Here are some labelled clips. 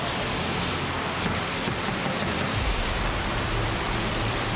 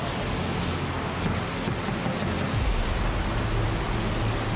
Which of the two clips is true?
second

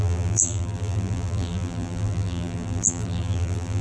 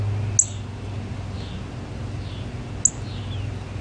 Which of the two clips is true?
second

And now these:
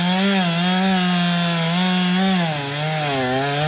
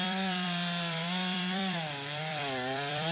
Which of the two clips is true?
first